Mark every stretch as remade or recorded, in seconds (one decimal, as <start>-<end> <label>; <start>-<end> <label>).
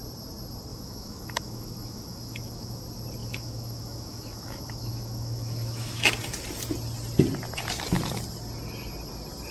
0.0-0.7 recorded; 0.7-2.8 remade; 2.8-3.2 recorded; 3.2-6.1 remade; 6.1-9.5 recorded